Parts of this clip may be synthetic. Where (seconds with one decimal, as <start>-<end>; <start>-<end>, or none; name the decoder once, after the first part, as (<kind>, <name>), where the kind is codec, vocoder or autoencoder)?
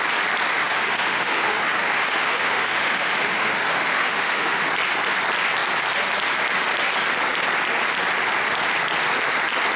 0.6-4.6 (autoencoder, DAC-VAE)